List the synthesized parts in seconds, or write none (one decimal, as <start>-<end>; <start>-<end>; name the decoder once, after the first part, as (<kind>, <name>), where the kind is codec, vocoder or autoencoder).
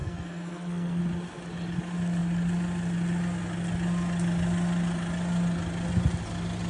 0.0-1.0 (codec, SNAC)